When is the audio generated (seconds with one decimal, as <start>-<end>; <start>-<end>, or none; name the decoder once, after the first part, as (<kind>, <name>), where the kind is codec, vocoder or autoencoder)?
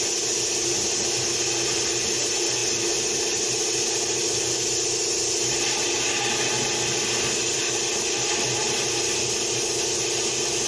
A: none